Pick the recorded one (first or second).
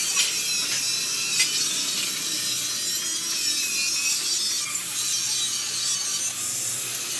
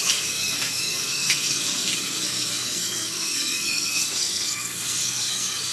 first